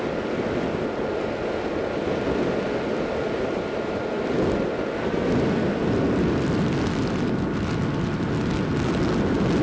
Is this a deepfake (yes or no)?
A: no